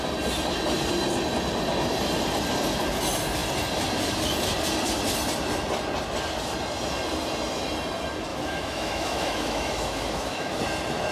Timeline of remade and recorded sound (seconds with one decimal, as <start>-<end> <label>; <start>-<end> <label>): 0.0-8.3 recorded; 8.3-10.6 remade; 10.6-11.1 recorded